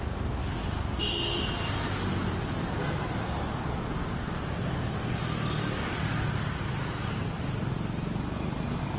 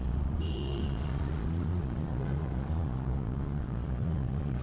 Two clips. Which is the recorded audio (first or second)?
first